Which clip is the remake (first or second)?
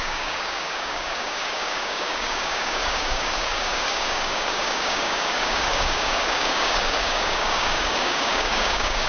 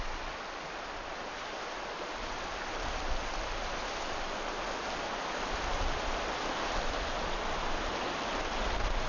first